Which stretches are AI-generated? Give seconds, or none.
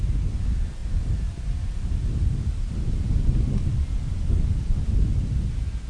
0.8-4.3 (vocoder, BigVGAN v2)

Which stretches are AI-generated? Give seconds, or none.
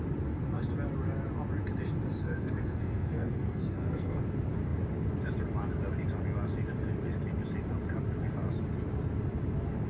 2.2-4.2 (codec, SNAC)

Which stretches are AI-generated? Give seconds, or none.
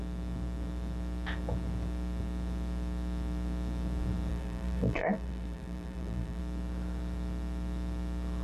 4.3-6.4 (vocoder, BigVGAN v2)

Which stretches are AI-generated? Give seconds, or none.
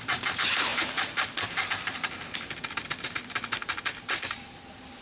0.0-5.0 (vocoder, BigVGAN v2)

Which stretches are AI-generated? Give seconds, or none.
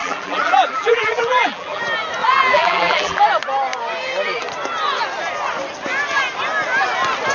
0.0-1.8 (vocoder, BigVGAN v2); 2.2-3.2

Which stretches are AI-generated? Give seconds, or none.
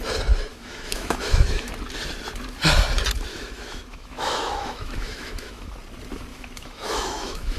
0.5-1.7 (autoencoder, DAC-VAE); 3.3-5.7; 6.3-7.6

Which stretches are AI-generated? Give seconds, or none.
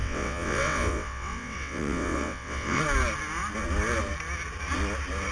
0.0-2.8 (vocoder, WaveNeXt)